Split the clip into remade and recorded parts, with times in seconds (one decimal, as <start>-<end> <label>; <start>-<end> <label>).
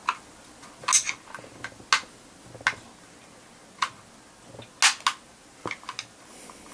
0.0-6.7 recorded